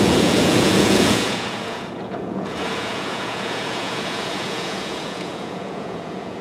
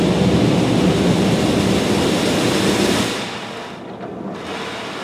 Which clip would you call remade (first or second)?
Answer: first